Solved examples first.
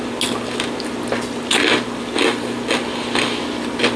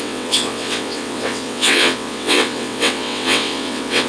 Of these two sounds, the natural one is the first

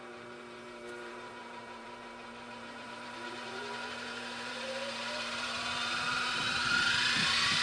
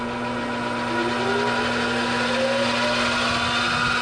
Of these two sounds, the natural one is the second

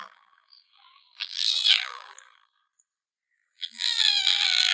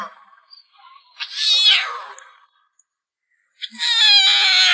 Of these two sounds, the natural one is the second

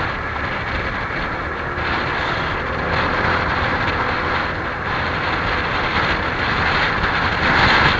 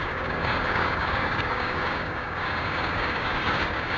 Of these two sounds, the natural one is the first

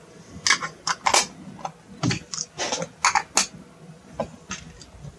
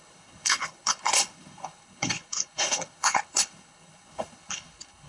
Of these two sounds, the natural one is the first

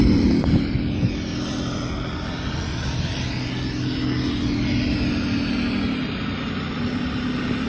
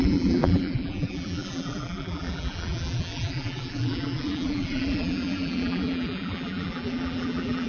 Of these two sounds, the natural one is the first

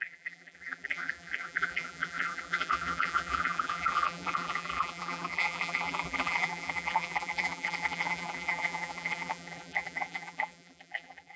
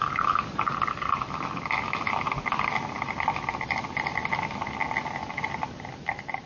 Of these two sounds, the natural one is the second